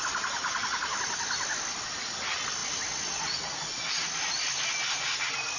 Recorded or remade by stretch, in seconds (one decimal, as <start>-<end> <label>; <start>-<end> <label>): 0.0-5.6 recorded